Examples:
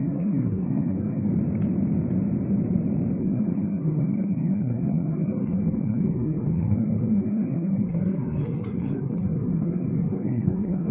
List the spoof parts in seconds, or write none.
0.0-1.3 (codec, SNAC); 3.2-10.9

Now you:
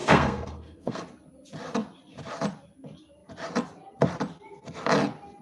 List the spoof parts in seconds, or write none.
0.0-1.0 (codec, SNAC)

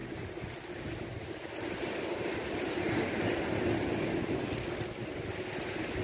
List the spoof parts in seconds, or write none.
none

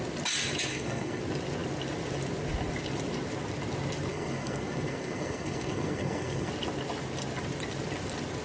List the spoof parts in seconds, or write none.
0.7-1.2 (codec, SNAC); 4.1-6.5